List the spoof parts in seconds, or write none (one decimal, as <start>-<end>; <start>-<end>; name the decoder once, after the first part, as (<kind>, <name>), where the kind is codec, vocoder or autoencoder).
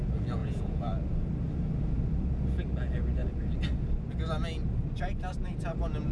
0.4-0.9 (vocoder, Vocos)